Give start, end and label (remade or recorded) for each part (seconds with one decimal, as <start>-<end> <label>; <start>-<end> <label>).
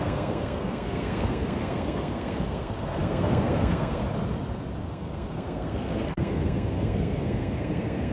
0.0-4.0 remade; 4.0-4.8 recorded; 4.8-8.1 remade